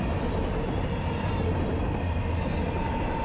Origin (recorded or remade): recorded